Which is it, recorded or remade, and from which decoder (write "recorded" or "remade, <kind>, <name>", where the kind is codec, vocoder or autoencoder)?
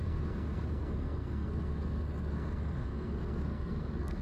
remade, codec, SNAC